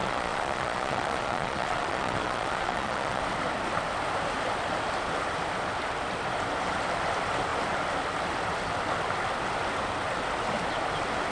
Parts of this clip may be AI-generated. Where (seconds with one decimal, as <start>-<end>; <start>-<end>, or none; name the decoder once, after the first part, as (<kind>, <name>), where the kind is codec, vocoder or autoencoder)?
0.0-3.2 (vocoder, Vocos)